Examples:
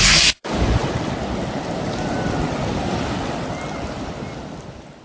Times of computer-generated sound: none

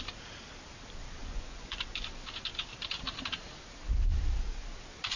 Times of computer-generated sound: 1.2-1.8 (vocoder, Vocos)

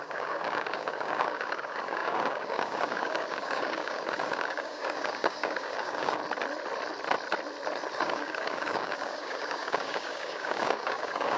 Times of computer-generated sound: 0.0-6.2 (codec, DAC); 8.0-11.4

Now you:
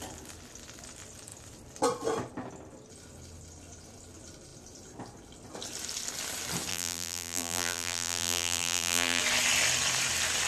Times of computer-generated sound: 6.7-9.2 (vocoder, BigVGAN v2)

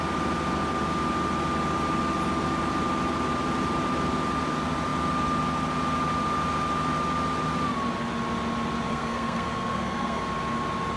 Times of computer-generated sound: 8.9-10.2 (codec, SNAC)

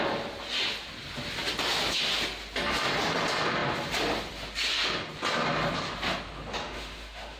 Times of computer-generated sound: 6.6-7.4 (autoencoder, DAC-VAE)

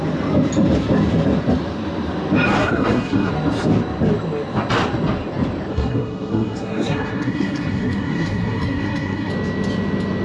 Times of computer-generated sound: 2.6-3.3 (codec, SNAC); 5.7-9.3

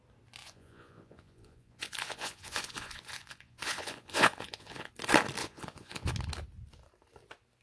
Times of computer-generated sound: 0.4-4.9 (vocoder, Vocos); 5.4-6.1